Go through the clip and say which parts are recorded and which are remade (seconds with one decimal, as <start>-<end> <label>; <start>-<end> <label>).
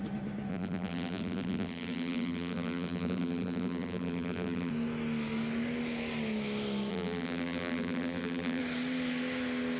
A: 0.0-0.5 recorded; 0.5-4.7 remade; 4.7-6.9 recorded; 6.9-8.6 remade; 8.6-9.8 recorded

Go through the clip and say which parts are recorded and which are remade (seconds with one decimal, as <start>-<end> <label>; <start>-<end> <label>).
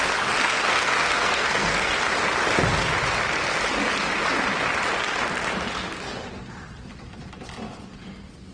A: 0.0-0.4 recorded; 0.4-1.9 remade; 1.9-8.5 recorded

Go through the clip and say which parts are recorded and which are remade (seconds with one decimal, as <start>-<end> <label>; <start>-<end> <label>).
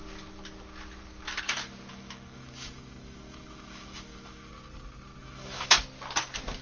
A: 0.0-1.9 recorded; 1.9-4.5 remade; 4.5-5.2 recorded; 5.2-5.8 remade; 5.8-6.6 recorded